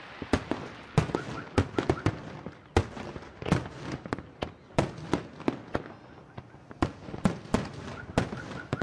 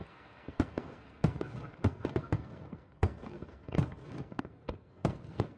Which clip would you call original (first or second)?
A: first